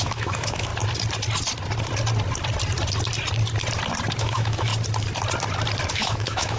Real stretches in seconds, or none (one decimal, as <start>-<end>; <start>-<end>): 0.7-4.2; 4.7-5.9

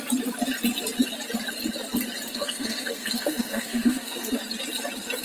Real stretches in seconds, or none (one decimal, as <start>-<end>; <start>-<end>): 0.0-2.3; 4.4-5.2

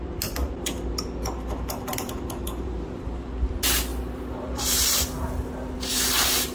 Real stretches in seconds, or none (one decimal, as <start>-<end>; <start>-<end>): 0.0-1.9; 3.3-6.5

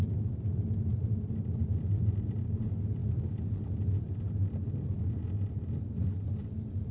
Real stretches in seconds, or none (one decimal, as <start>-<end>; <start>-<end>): 0.0-6.9

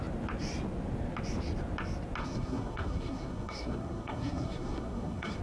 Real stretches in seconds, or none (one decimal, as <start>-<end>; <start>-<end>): 0.0-2.2

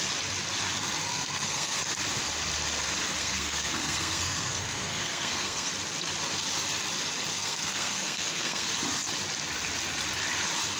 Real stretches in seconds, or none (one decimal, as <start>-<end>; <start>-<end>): 0.0-1.1; 1.8-3.2; 5.7-7.3; 8.7-10.8

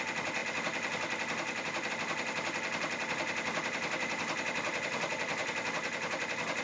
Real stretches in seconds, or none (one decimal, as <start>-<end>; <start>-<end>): 0.0-6.6

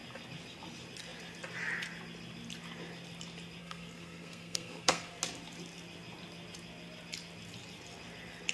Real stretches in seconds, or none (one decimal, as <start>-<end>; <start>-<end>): 0.0-3.6; 5.2-8.5